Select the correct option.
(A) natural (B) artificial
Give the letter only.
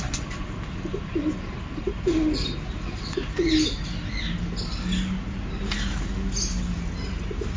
A